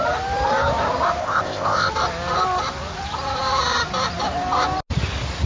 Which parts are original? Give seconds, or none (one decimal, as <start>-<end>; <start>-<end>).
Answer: 0.0-1.2; 1.9-5.5